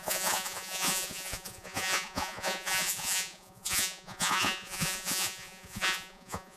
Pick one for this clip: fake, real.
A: fake